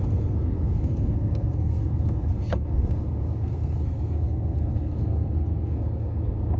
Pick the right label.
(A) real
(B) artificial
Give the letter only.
B